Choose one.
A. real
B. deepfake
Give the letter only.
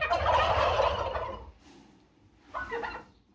A